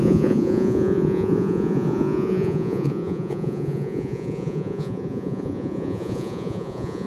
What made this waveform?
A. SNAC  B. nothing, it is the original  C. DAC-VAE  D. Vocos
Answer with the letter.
D